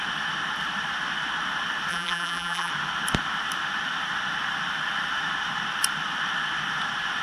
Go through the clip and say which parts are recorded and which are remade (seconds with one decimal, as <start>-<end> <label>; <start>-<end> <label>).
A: 0.0-1.9 recorded; 1.9-2.7 remade; 2.7-7.2 recorded